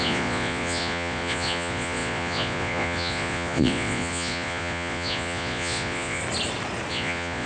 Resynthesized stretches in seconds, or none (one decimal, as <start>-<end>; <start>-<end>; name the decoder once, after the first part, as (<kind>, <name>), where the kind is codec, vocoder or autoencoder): 0.0-6.2 (vocoder, Vocos); 6.9-7.5